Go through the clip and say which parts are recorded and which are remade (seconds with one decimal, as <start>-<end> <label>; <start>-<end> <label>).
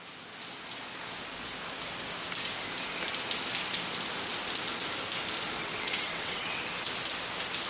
0.0-5.6 recorded; 5.6-6.6 remade; 6.6-7.7 recorded